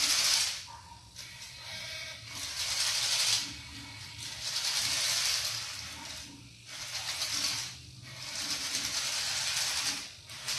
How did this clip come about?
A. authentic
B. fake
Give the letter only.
A